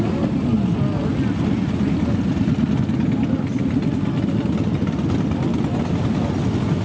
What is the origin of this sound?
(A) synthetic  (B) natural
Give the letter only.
B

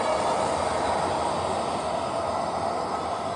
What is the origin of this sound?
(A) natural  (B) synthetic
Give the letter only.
A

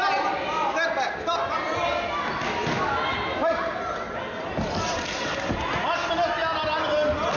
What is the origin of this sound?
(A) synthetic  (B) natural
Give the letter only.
B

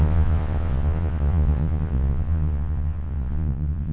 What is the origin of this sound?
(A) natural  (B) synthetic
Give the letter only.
B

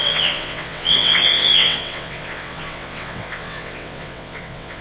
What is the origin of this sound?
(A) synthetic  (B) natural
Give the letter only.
A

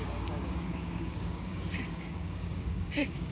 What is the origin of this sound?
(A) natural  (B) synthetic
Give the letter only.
B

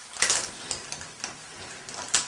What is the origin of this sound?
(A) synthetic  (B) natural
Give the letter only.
B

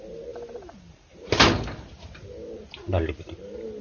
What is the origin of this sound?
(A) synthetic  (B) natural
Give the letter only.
B